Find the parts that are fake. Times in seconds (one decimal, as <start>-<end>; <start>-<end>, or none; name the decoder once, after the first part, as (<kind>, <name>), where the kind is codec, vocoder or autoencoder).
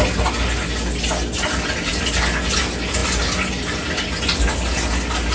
none